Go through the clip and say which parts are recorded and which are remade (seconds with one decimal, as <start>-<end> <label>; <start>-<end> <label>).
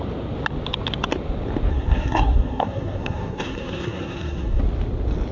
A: 0.0-1.7 recorded; 1.7-4.6 remade; 4.6-5.3 recorded